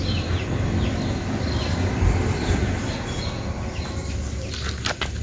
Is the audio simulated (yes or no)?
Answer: no